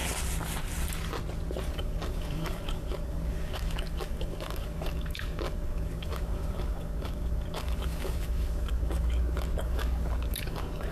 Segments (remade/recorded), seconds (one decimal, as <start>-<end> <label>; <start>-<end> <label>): 0.0-1.7 recorded; 1.7-10.9 remade